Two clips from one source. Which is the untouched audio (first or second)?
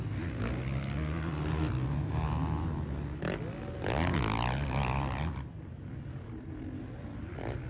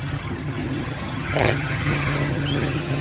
first